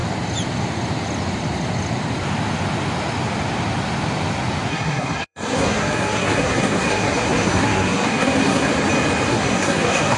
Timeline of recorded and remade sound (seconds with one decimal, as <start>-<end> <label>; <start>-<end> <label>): 0.0-4.7 recorded; 4.7-8.7 remade; 8.7-9.3 recorded; 9.3-10.2 remade